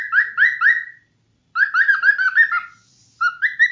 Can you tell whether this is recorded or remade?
recorded